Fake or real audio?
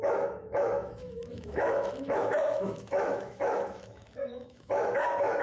fake